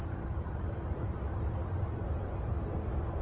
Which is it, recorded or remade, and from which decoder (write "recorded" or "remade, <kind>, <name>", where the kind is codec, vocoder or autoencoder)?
recorded